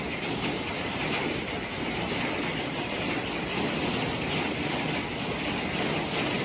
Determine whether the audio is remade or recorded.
recorded